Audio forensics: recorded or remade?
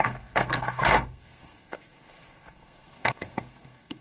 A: remade